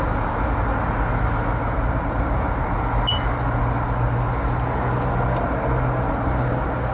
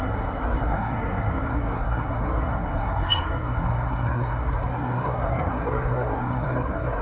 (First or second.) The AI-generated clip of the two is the second